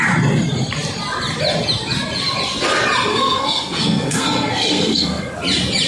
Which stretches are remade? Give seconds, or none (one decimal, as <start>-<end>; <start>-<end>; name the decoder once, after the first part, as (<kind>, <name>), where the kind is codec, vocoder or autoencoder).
3.1-5.3 (codec, SNAC)